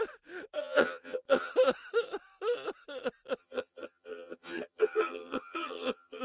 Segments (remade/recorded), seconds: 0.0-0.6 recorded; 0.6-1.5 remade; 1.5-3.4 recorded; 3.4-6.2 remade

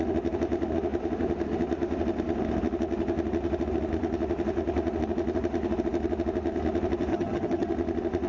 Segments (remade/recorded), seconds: 0.0-7.1 recorded; 7.1-7.7 remade; 7.7-8.3 recorded

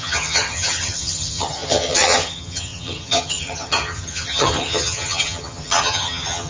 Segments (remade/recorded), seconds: 0.0-6.5 remade

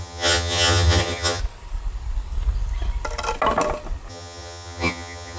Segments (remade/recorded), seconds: 0.0-1.4 remade; 1.4-4.1 recorded; 4.1-5.4 remade